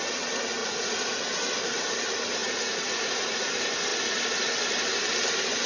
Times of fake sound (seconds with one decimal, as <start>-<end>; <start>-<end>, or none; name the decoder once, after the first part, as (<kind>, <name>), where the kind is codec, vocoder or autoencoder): 0.6-1.2 (vocoder, Vocos); 2.4-3.5